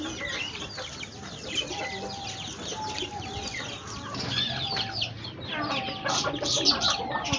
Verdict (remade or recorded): recorded